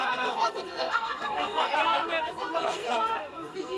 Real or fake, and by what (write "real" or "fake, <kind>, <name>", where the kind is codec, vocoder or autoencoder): fake, codec, SNAC